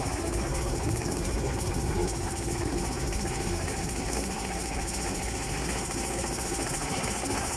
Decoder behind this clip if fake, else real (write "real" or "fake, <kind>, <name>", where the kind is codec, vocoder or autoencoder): fake, codec, SNAC